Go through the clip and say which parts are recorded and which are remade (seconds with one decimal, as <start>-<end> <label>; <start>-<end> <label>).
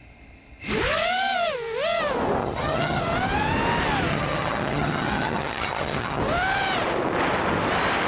0.0-2.4 recorded; 2.4-3.0 remade; 3.0-4.1 recorded; 4.1-6.2 remade; 6.2-8.1 recorded